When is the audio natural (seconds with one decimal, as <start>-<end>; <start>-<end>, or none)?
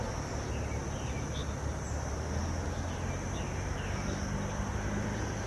0.0-5.5